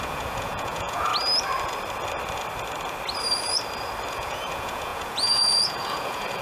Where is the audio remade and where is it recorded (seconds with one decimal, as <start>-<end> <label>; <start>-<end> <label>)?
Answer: 0.0-1.1 remade; 1.1-4.1 recorded; 4.1-6.4 remade